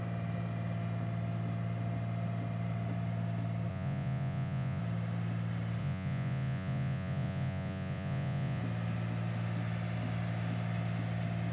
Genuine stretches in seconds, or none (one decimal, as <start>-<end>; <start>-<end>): 0.0-3.7; 4.8-5.8; 8.6-11.5